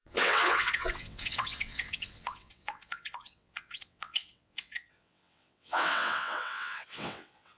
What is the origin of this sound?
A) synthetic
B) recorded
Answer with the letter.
A